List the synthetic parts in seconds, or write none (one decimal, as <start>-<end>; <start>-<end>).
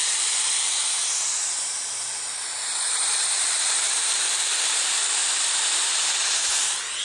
0.0-1.0; 2.1-5.2